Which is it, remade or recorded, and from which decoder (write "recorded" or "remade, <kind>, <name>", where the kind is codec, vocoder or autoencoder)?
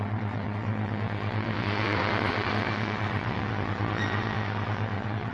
remade, vocoder, WaveNeXt